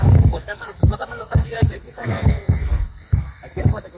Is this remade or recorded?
remade